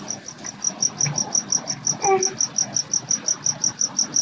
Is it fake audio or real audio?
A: real